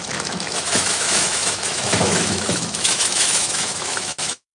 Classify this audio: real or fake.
fake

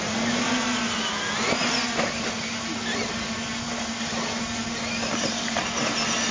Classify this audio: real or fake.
real